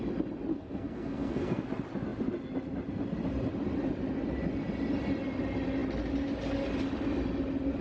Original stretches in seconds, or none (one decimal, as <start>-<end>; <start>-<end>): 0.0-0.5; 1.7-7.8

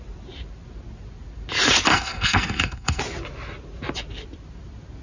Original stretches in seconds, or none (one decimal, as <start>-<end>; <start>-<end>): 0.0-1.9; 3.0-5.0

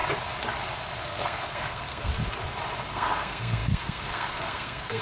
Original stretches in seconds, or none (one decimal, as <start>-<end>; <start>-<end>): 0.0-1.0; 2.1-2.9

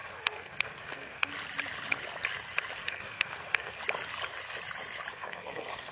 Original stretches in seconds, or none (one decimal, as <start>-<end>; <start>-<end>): 1.3-2.8; 3.8-5.1